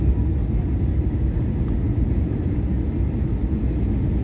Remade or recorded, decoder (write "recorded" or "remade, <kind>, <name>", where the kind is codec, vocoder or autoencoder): recorded